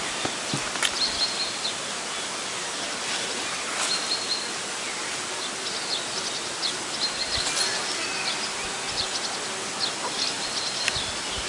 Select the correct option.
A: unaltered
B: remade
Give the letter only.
A